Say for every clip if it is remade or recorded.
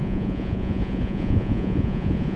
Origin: remade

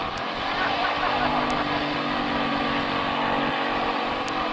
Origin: recorded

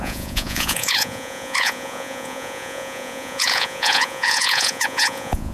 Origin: remade